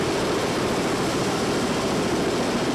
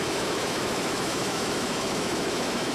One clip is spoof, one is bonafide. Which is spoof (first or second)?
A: second